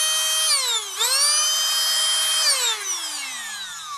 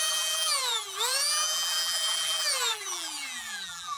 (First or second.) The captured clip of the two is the first